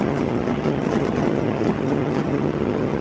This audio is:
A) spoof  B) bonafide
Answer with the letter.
A